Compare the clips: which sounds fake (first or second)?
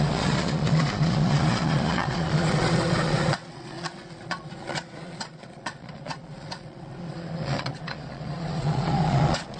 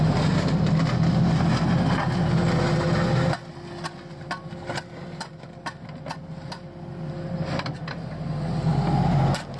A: first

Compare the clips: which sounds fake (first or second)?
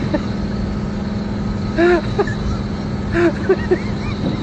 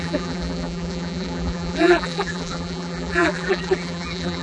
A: second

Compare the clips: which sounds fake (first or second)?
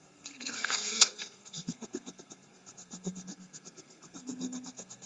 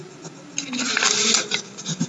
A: first